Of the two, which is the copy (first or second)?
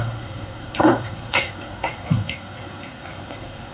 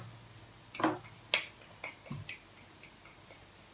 first